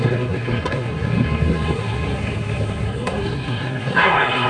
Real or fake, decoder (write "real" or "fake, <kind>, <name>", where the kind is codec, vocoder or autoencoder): fake, codec, SNAC